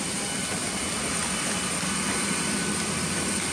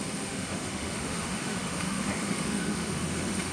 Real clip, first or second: first